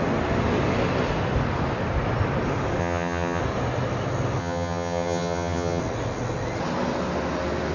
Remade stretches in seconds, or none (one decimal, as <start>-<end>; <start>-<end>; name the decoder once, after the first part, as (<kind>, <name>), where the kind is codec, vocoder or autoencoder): 2.8-3.4 (vocoder, HiFi-GAN); 4.4-5.8